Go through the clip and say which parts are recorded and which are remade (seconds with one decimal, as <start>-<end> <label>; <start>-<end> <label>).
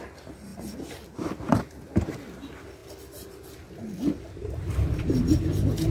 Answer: 0.0-5.9 recorded